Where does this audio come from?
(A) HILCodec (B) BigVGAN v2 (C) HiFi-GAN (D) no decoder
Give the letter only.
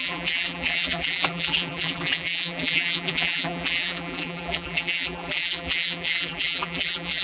B